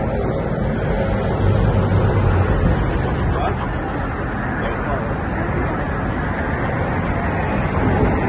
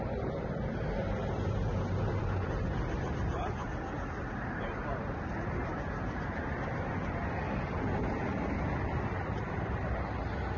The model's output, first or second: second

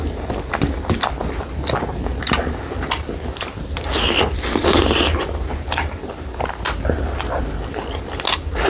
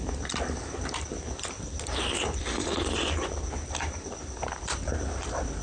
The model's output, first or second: second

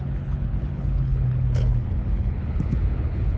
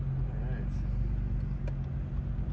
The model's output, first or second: first